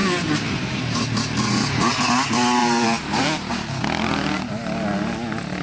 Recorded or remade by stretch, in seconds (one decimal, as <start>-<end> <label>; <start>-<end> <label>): 0.0-2.0 remade; 2.0-2.6 recorded; 2.6-3.5 remade; 3.5-5.6 recorded